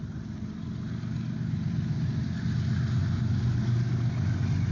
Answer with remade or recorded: recorded